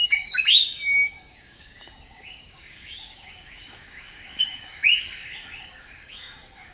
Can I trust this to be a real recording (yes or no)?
no